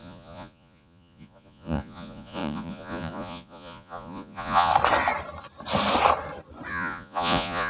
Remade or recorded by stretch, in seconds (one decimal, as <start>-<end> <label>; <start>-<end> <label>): 0.0-4.7 remade; 4.7-6.7 recorded; 6.7-7.7 remade